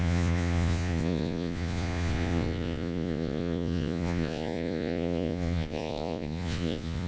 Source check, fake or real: fake